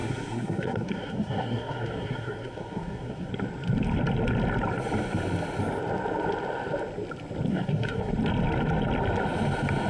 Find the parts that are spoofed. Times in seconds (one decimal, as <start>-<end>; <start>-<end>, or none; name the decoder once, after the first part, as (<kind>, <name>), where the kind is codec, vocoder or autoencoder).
0.0-3.3 (codec, SNAC); 7.5-8.1